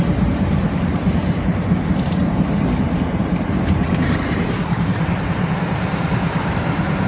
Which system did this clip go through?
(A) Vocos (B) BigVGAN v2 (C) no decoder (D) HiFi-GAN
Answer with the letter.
B